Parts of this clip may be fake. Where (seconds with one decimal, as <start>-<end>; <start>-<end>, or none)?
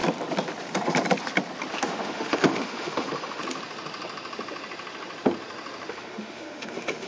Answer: 1.8-3.4; 5.9-7.1